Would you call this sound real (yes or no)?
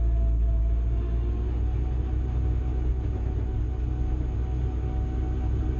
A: yes